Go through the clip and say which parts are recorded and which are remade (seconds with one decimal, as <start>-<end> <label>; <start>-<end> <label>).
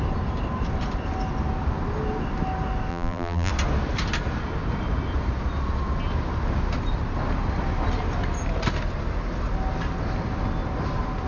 0.0-2.9 recorded; 2.9-3.5 remade; 3.5-11.3 recorded